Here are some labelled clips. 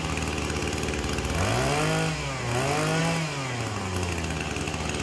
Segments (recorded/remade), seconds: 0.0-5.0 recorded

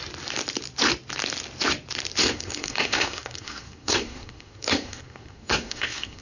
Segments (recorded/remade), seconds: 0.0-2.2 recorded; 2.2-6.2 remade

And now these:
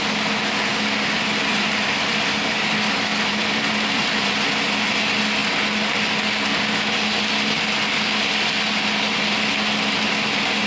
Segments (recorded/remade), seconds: 0.0-3.1 recorded; 3.1-4.3 remade; 4.3-10.7 recorded